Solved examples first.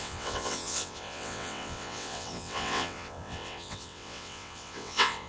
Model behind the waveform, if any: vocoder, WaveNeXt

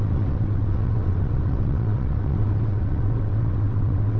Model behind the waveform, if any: vocoder, WaveNeXt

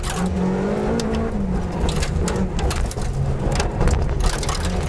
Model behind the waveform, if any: none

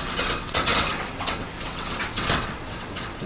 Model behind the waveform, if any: vocoder, WaveNeXt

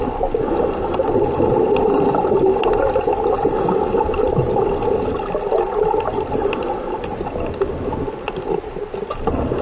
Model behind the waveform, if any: none